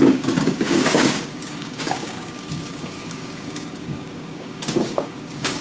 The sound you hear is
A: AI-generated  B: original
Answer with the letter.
A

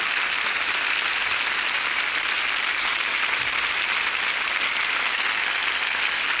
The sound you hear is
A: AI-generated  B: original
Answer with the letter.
B